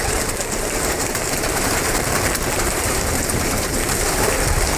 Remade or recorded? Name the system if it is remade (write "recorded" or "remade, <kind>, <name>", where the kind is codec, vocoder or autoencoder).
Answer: remade, vocoder, BigVGAN v2